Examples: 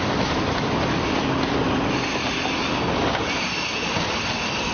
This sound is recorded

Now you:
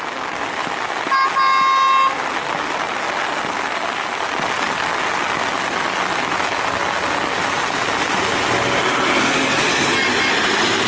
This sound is recorded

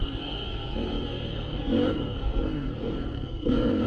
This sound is remade